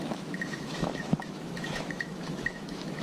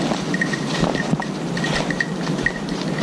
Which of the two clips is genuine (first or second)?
second